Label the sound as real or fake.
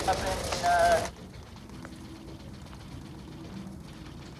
real